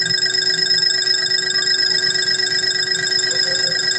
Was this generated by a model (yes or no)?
no